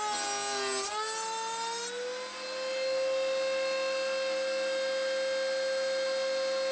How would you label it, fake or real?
real